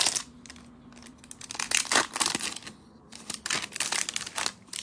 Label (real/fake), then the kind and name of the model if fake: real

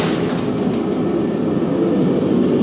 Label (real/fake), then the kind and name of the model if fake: real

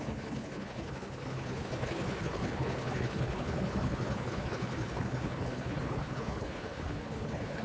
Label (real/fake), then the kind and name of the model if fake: fake, codec, HILCodec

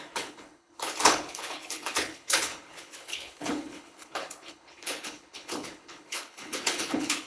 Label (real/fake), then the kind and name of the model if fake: fake, codec, HILCodec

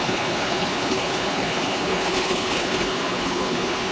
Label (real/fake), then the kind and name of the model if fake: fake, codec, HILCodec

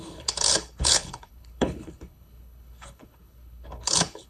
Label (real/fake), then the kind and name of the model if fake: fake, codec, HILCodec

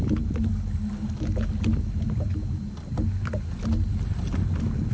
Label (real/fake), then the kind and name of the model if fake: real